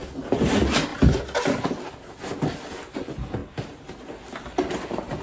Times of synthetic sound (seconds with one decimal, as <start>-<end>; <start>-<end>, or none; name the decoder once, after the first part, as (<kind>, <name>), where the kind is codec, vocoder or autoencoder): none